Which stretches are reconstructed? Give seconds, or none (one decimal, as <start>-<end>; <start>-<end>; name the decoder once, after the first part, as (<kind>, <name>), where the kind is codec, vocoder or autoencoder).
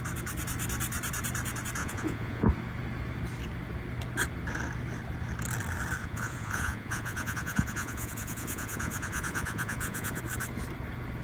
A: 1.8-2.5 (vocoder, Vocos); 6.0-10.2